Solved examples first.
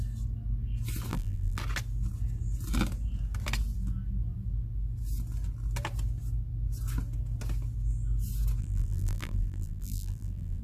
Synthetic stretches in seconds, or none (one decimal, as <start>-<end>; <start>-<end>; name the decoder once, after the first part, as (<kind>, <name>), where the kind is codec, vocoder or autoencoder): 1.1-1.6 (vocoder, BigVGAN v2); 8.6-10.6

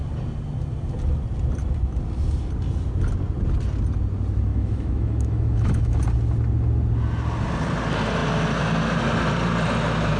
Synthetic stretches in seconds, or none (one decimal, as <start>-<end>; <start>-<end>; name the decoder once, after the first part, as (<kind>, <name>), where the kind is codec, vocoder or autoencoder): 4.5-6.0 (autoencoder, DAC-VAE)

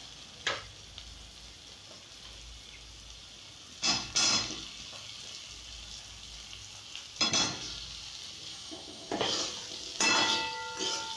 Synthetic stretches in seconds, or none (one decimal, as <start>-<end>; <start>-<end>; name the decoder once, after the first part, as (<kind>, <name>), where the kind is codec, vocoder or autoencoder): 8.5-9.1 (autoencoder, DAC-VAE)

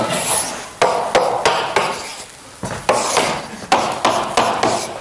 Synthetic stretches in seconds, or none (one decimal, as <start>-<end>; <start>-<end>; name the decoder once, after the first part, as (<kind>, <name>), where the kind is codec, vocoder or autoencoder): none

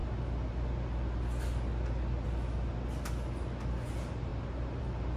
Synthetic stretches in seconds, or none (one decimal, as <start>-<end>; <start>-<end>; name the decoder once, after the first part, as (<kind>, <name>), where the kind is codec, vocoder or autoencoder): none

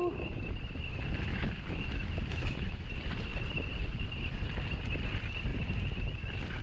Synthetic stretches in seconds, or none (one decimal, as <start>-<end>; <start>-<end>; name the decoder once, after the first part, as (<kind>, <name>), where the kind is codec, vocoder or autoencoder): 1.3-2.9 (autoencoder, DAC-VAE)

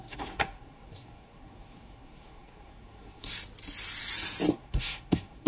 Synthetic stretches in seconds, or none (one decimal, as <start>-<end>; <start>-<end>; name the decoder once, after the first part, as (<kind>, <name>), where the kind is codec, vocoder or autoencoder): 0.0-3.3 (codec, SNAC); 4.5-5.5

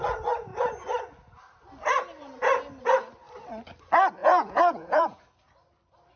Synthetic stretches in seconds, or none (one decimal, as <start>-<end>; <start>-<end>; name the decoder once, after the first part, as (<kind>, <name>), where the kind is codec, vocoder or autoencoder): 4.2-5.2 (vocoder, Vocos)